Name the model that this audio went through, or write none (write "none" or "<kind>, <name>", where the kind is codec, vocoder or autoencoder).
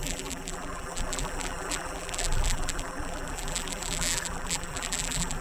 vocoder, BigVGAN v2